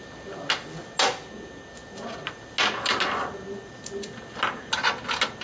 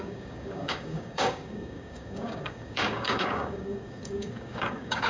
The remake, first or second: second